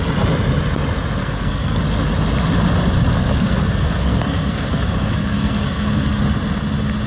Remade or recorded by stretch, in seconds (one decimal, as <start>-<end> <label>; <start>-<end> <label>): 0.0-1.2 recorded; 1.2-1.8 remade; 1.8-3.1 recorded; 3.1-6.2 remade; 6.2-7.1 recorded